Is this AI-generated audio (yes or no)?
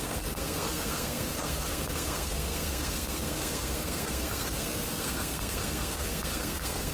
yes